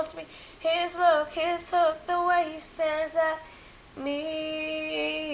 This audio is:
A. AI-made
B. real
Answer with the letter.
B